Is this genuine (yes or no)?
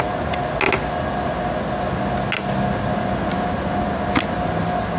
yes